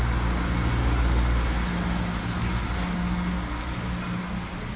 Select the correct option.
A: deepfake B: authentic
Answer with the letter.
B